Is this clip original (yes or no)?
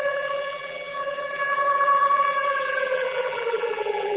no